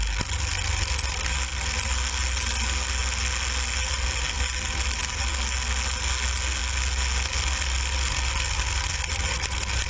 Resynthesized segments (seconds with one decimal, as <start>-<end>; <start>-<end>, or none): none